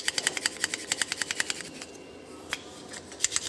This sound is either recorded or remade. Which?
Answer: recorded